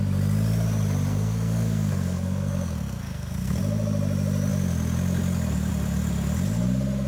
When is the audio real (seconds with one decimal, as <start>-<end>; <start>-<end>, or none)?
0.0-1.1; 3.6-7.1